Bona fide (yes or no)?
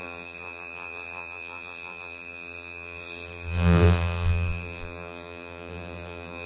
no